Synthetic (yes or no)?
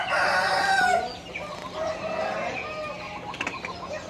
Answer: no